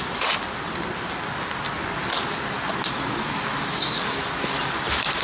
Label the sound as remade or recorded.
recorded